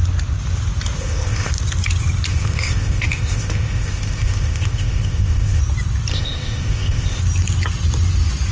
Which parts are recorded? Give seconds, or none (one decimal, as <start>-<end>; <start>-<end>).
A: 0.0-1.0; 1.5-2.3; 5.6-6.1; 7.2-8.5